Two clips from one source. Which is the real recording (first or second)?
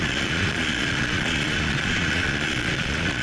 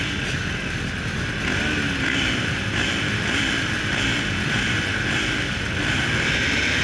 second